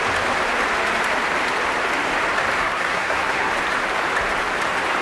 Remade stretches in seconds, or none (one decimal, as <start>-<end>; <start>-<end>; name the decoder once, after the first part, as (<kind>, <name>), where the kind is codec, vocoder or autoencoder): 2.6-3.5 (codec, SNAC)